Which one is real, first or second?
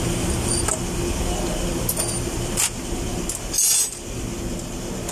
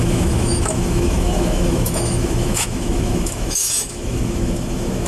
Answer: first